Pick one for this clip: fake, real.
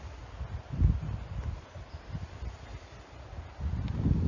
real